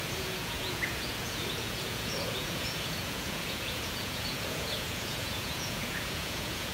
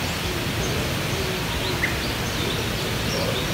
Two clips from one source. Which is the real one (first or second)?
second